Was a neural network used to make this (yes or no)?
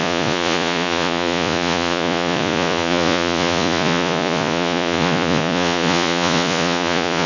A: yes